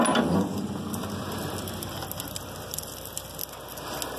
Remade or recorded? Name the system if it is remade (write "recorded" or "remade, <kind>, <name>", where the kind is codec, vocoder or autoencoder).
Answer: recorded